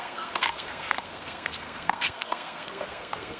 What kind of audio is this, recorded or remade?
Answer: remade